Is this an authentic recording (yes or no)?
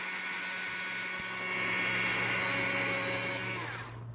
yes